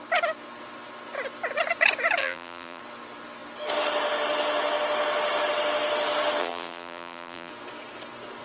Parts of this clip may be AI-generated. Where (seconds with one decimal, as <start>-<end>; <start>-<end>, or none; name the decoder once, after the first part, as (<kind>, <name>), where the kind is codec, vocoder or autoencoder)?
2.2-2.8 (vocoder, BigVGAN v2); 6.4-7.5